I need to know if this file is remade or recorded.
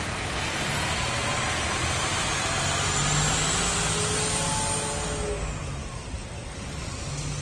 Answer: recorded